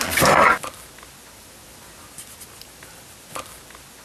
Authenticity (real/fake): real